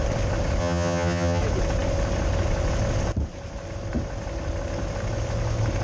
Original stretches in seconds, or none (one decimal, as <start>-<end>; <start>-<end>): 0.0-0.6; 1.4-5.8